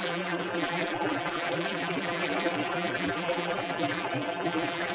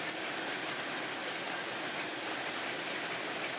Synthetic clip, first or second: first